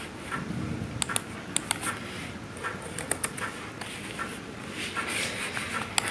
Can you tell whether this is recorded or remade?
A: recorded